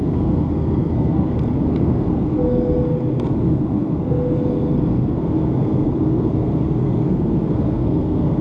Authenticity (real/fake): fake